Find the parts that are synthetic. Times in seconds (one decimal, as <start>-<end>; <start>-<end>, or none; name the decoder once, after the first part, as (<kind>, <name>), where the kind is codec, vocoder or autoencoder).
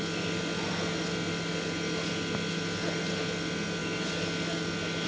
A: none